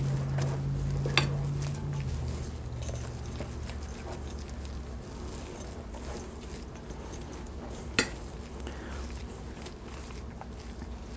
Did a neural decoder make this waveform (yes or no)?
no